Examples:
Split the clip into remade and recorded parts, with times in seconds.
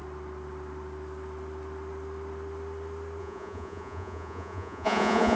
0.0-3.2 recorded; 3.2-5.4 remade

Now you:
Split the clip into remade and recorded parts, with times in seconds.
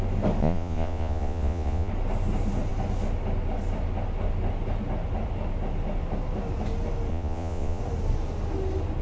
0.0-0.4 recorded; 0.4-1.9 remade; 1.9-7.1 recorded; 7.1-7.8 remade; 7.8-9.0 recorded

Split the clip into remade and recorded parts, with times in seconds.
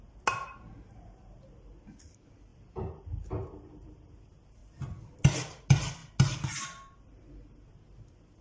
0.0-8.4 recorded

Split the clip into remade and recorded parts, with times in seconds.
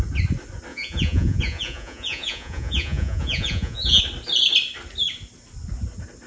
0.0-0.7 recorded; 0.7-4.0 remade; 4.0-6.3 recorded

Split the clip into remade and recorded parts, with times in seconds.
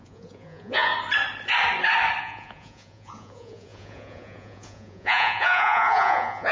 0.0-0.9 remade; 0.9-2.2 recorded; 2.2-6.5 remade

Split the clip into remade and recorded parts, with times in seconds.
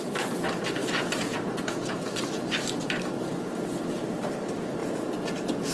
0.0-0.8 recorded; 0.8-2.0 remade; 2.0-4.8 recorded; 4.8-5.7 remade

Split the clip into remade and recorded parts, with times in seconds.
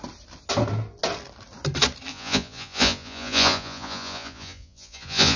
0.0-2.1 recorded; 2.1-5.4 remade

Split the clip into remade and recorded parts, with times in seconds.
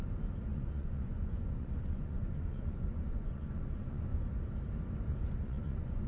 0.0-0.5 recorded; 0.5-4.2 remade; 4.2-5.1 recorded; 5.1-6.1 remade